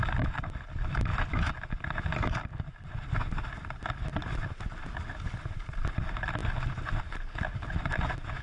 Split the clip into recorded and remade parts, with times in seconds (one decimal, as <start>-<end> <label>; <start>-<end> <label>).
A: 0.0-1.1 remade; 1.1-3.1 recorded; 3.1-4.1 remade; 4.1-5.8 recorded; 5.8-6.4 remade; 6.4-7.0 recorded; 7.0-8.4 remade